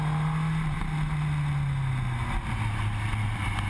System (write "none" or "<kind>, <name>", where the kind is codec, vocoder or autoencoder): none